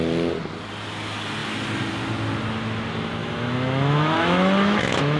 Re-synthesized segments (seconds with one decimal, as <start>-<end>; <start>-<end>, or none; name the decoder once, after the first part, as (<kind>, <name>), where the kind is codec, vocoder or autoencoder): 3.2-5.2 (autoencoder, DAC-VAE)